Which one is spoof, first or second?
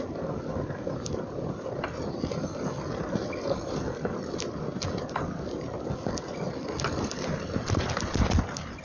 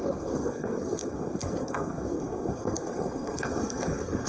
second